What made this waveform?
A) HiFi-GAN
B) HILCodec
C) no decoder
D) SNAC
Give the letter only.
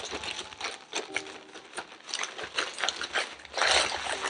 C